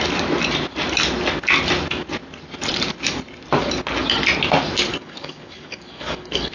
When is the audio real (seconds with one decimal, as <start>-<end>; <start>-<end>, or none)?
0.0-4.9